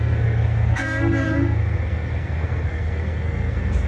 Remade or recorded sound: remade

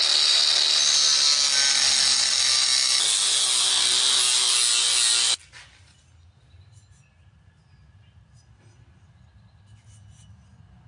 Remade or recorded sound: recorded